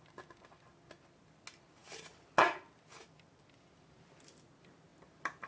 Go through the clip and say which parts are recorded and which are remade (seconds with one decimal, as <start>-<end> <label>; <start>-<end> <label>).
0.0-5.5 recorded